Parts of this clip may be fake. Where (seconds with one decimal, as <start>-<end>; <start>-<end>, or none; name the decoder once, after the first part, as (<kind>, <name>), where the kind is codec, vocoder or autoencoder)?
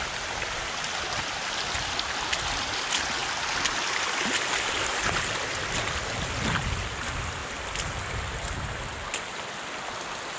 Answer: none